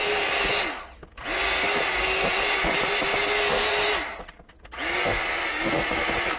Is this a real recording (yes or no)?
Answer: yes